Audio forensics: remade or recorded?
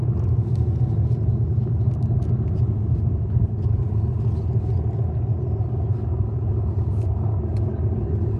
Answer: recorded